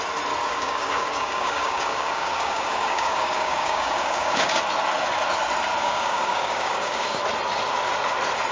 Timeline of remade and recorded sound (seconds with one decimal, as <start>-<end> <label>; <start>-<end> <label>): 0.0-0.4 recorded; 0.4-4.6 remade; 4.6-5.8 recorded; 5.8-7.2 remade; 7.2-8.5 recorded